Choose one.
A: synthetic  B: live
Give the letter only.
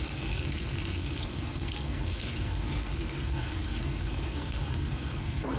A